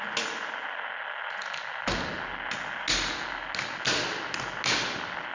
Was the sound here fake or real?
real